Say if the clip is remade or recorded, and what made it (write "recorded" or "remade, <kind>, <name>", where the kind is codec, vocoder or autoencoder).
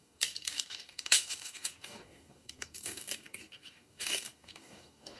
remade, codec, DAC